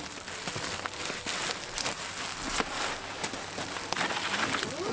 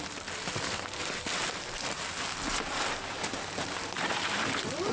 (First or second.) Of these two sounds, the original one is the first